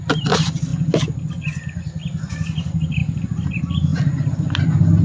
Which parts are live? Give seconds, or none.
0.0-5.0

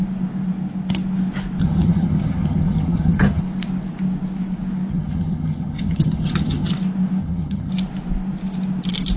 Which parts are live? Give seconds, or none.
0.0-1.6; 3.4-4.9; 6.7-7.2; 7.7-9.2

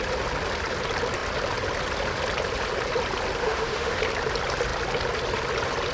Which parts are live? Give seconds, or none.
0.0-3.4; 4.0-5.9

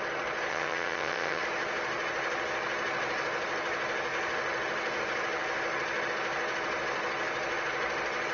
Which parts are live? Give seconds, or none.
0.0-0.5; 1.4-8.3